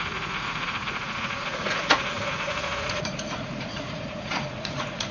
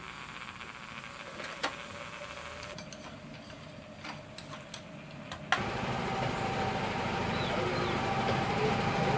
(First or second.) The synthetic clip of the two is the first